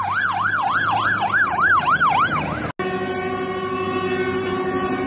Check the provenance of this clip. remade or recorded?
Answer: recorded